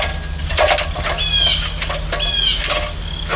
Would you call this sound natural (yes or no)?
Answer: yes